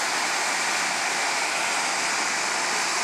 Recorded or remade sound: recorded